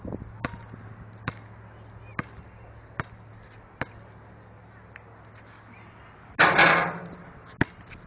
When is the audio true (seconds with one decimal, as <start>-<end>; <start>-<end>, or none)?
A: 0.0-8.1